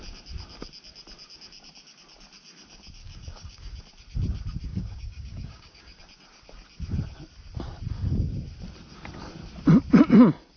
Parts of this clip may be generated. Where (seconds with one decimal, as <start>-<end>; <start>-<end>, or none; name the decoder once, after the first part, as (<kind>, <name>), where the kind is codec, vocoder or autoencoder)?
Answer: 3.0-3.8 (codec, DAC); 4.7-6.0